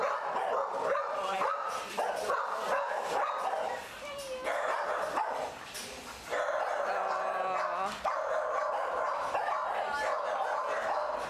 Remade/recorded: recorded